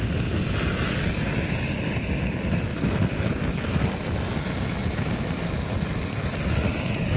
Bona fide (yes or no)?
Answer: yes